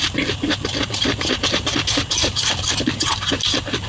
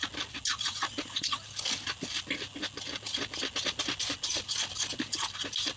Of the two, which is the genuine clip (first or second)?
second